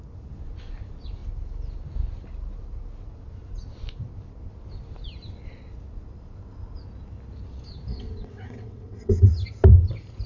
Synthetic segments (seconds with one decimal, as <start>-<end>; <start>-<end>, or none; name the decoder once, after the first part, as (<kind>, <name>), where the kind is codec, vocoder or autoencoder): 7.9-9.3 (vocoder, WaveNeXt)